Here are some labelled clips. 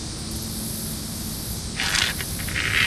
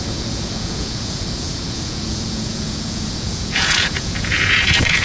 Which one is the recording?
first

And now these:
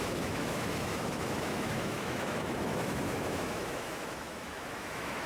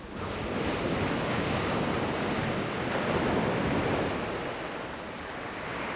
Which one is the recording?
second